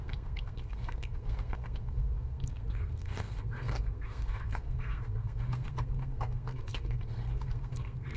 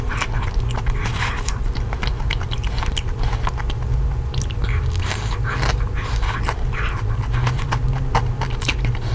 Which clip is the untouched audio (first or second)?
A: second